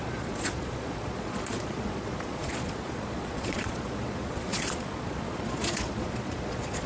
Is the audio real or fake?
fake